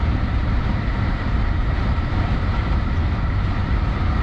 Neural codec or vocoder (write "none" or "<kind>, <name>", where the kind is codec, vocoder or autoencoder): vocoder, BigVGAN v2